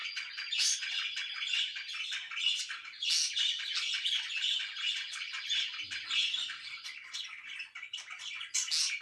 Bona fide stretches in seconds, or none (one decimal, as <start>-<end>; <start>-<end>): 0.9-9.0